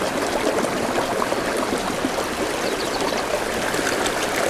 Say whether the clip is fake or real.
real